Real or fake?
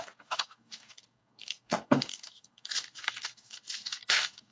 fake